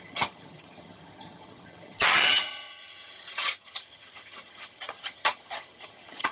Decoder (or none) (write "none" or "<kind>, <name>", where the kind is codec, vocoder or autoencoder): vocoder, HiFi-GAN